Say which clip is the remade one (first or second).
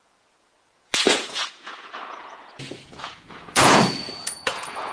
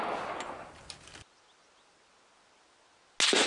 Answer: first